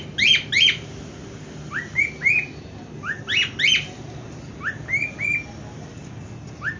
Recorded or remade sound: recorded